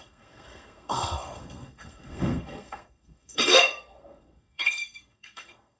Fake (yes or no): yes